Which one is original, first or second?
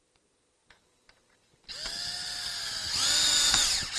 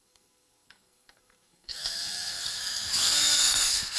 first